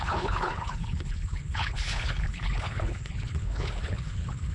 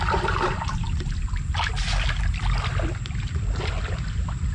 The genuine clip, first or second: second